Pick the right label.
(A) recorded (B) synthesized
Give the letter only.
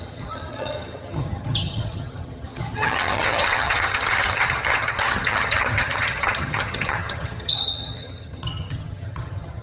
B